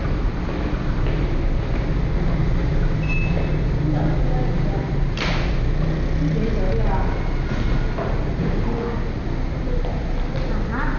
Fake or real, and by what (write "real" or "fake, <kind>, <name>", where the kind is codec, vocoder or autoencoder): real